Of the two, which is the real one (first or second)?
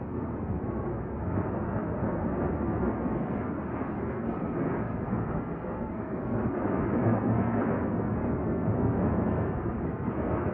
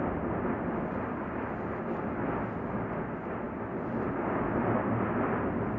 second